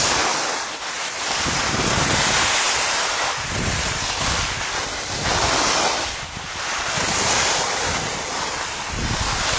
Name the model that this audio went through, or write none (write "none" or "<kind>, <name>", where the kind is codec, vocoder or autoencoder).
vocoder, BigVGAN v2